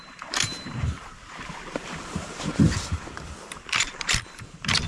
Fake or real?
fake